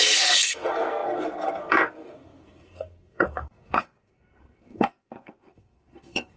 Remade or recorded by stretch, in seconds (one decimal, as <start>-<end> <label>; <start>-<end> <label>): 0.0-6.4 remade